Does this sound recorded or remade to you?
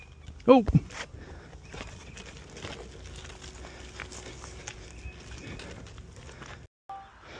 recorded